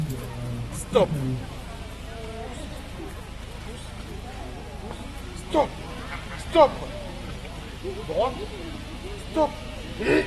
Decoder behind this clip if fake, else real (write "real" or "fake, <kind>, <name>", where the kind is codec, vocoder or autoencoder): real